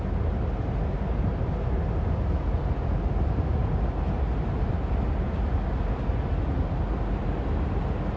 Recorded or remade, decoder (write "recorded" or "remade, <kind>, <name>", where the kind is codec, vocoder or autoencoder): recorded